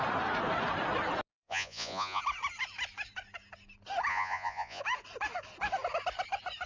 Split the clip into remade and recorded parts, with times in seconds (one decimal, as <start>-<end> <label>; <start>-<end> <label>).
0.0-1.3 recorded; 1.3-2.2 remade; 2.2-4.1 recorded; 4.1-4.8 remade; 4.8-6.7 recorded